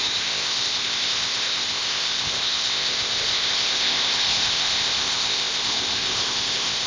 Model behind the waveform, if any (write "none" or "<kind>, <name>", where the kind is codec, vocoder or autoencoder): codec, ZipCodec